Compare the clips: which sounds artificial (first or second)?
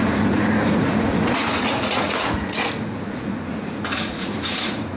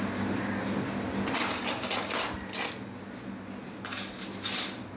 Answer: first